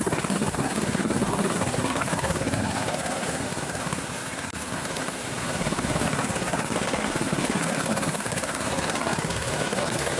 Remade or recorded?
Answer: remade